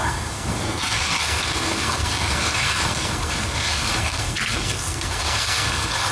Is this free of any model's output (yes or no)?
no